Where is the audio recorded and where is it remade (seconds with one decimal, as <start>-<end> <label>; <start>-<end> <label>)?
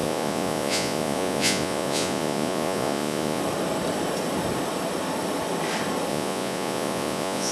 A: 0.0-3.4 remade; 3.4-6.1 recorded; 6.1-7.5 remade